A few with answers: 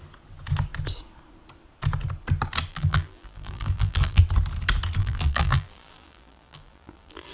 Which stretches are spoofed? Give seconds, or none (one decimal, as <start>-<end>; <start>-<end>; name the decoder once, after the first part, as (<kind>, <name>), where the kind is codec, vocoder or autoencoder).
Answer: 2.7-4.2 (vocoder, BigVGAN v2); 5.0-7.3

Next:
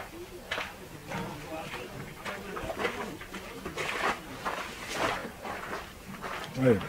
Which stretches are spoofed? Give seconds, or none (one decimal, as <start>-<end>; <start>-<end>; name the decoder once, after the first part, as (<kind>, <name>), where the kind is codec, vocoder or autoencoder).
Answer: none

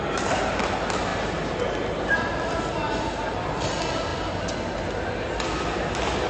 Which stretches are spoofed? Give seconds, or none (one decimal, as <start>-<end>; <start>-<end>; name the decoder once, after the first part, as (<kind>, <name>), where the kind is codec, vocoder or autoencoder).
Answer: none

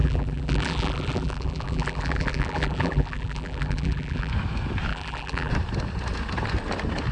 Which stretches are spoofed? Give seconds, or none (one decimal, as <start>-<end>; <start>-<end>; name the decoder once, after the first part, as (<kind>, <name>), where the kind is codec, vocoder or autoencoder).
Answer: 0.0-4.3 (vocoder, BigVGAN v2); 4.9-5.5

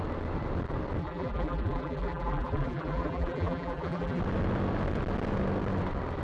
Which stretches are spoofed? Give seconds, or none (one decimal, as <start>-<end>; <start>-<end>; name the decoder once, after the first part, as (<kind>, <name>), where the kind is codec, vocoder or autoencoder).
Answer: 1.0-4.2 (vocoder, BigVGAN v2)

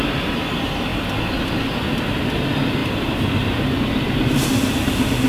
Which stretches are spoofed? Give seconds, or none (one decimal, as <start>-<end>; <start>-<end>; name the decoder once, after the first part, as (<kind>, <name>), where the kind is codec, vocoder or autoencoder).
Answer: none